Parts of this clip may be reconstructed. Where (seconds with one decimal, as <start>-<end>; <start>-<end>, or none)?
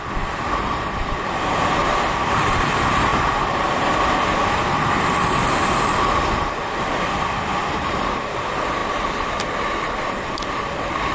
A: 0.0-3.1; 6.8-11.1